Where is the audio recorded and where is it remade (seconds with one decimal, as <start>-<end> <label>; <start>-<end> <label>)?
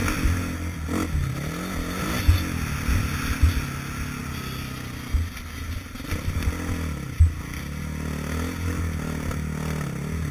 0.0-10.3 recorded